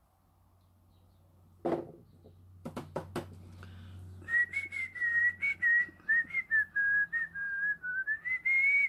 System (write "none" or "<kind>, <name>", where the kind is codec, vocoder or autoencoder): none